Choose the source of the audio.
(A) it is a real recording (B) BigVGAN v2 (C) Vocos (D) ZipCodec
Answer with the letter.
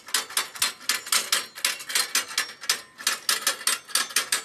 A